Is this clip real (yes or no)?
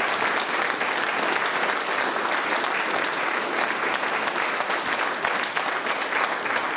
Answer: yes